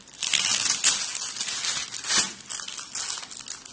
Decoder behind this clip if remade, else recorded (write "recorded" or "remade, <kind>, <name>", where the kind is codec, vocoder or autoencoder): recorded